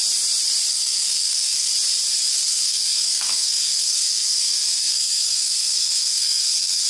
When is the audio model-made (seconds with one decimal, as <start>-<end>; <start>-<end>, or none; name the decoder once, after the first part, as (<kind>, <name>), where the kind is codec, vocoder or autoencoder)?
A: 0.7-1.7 (codec, SNAC); 2.3-6.9